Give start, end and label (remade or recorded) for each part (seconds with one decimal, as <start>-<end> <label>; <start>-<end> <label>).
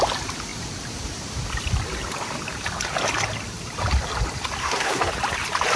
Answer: 0.0-4.6 recorded; 4.6-5.1 remade; 5.1-5.8 recorded